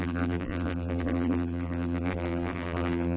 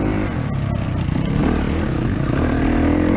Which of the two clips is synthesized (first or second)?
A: first